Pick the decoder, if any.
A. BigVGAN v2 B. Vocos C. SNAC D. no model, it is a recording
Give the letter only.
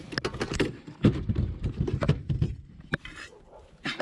D